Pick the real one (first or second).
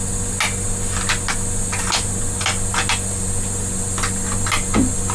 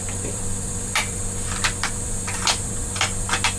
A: first